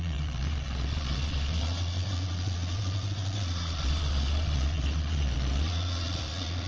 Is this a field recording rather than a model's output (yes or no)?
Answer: no